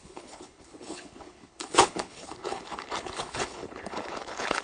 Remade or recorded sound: remade